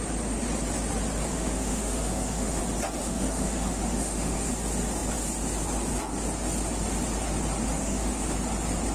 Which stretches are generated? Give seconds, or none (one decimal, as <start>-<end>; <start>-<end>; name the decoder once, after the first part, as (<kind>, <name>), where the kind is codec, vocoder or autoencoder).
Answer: 1.3-2.6 (autoencoder, DAC-VAE); 3.0-4.5; 7.7-8.3